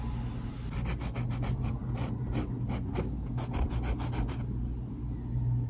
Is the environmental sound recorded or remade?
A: recorded